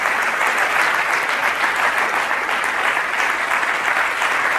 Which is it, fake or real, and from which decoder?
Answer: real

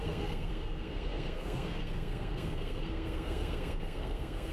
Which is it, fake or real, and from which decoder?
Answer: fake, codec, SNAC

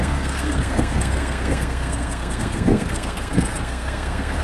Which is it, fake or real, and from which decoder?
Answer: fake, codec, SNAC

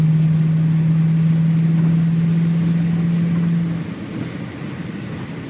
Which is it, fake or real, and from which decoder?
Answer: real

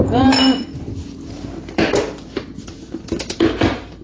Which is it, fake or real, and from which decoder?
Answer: fake, vocoder, BigVGAN v2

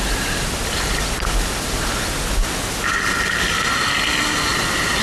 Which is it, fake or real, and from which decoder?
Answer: real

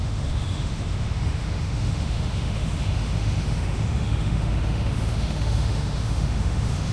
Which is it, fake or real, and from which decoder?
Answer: fake, autoencoder, DAC-VAE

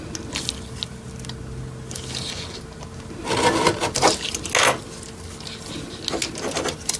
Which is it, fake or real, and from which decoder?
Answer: real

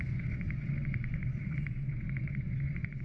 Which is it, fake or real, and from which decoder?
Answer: fake, vocoder, Vocos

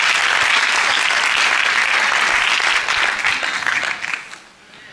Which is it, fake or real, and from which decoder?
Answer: real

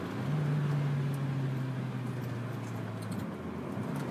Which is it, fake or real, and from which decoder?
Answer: real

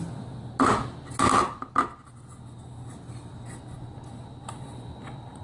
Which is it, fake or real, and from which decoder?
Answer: real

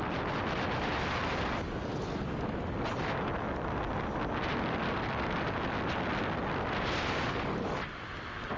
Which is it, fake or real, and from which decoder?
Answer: real